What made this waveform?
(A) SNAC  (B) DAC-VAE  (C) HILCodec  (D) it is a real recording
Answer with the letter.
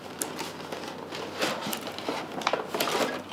D